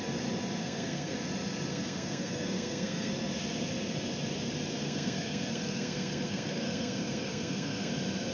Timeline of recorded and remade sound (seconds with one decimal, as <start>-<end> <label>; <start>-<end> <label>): 0.0-0.6 recorded; 0.6-1.2 remade; 1.2-1.7 recorded; 1.7-3.1 remade; 3.1-4.8 recorded; 4.8-7.9 remade; 7.9-8.3 recorded